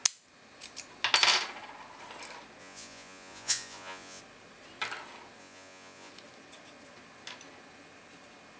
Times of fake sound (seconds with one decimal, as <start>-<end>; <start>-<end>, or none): 2.6-4.2; 5.4-6.1